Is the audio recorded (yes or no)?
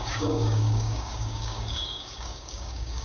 no